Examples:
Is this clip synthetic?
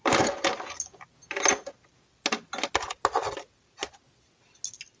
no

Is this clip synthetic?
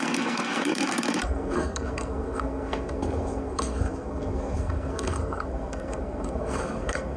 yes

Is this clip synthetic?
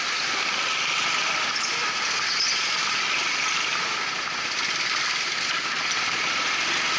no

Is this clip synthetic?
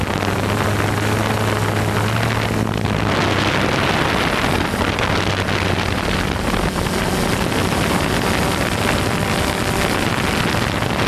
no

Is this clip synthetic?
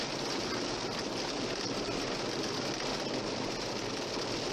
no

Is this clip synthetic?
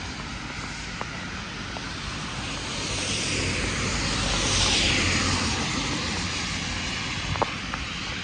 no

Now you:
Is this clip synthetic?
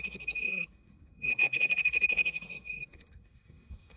yes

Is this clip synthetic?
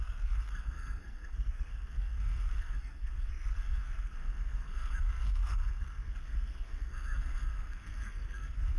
yes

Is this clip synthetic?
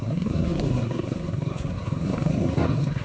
yes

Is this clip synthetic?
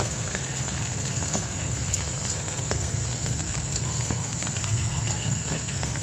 yes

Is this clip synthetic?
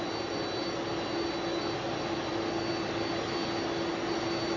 no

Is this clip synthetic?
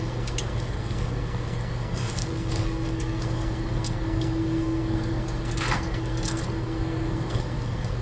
yes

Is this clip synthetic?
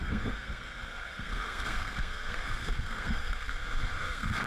yes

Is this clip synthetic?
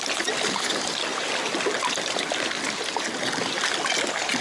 no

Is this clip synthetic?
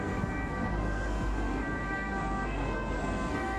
yes